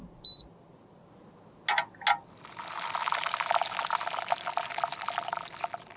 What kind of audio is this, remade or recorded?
recorded